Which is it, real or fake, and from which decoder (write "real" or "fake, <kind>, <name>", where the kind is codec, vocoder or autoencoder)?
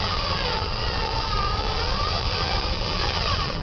fake, vocoder, WaveNeXt